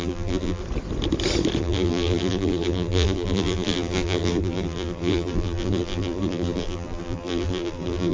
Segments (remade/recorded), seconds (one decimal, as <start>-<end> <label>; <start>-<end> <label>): 0.0-0.6 remade; 0.6-1.6 recorded; 1.6-8.1 remade